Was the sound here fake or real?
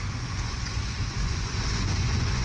fake